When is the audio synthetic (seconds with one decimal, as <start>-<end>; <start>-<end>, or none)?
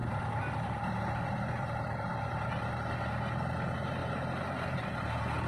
0.0-2.7; 4.0-5.1